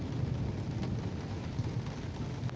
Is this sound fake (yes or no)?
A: no